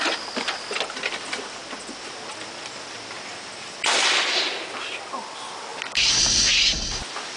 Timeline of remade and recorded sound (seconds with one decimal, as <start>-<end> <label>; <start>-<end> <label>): 0.0-7.4 recorded